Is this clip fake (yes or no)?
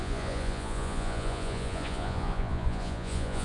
yes